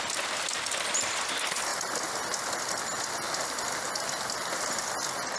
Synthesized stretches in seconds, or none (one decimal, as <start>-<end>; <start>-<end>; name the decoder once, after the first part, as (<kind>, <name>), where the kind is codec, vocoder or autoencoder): none